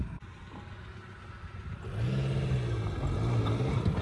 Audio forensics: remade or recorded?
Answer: recorded